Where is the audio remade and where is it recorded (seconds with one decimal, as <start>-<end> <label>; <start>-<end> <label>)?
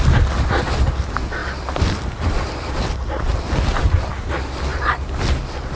0.0-1.4 recorded; 1.4-2.8 remade; 2.8-3.3 recorded; 3.3-3.9 remade; 3.9-4.7 recorded; 4.7-5.2 remade; 5.2-5.8 recorded